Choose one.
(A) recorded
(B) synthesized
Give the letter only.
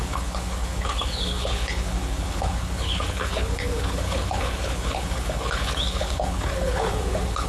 B